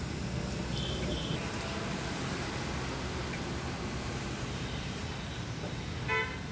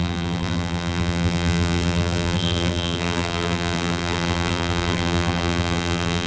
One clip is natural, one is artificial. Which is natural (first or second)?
first